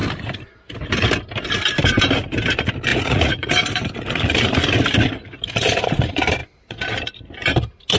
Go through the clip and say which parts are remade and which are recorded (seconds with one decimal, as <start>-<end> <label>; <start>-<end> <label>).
0.0-2.9 recorded; 2.9-3.5 remade; 3.5-8.0 recorded